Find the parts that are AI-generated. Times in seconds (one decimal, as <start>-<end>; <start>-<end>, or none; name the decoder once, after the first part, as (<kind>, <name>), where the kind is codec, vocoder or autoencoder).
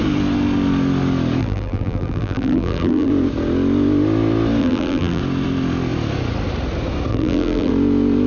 1.4-3.1 (vocoder, BigVGAN v2); 4.6-5.2; 7.1-7.7